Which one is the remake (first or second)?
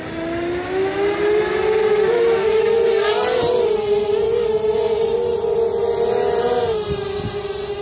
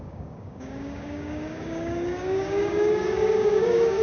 second